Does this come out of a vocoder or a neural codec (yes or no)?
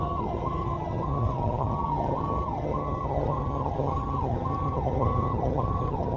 yes